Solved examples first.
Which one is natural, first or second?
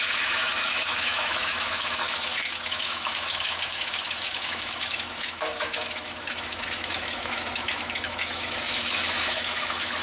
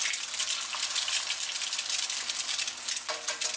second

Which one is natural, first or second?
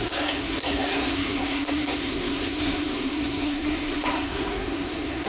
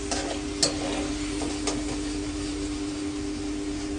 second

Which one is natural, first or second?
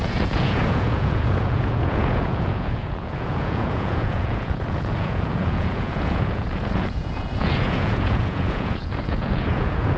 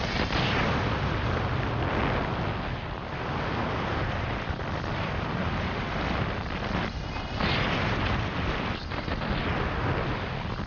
second